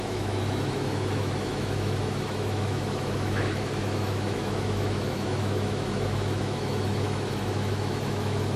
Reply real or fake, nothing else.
fake